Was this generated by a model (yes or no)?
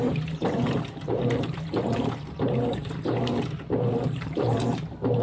yes